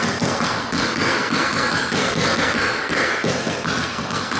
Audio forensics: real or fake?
fake